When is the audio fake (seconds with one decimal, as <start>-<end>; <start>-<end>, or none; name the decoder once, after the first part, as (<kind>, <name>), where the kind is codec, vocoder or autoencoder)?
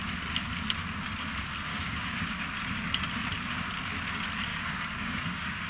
1.7-2.3 (codec, DAC); 4.5-5.7